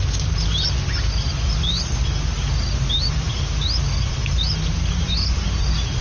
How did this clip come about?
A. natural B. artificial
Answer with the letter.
A